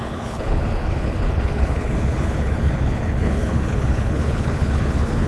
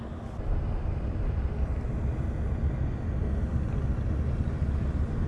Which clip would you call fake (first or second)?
first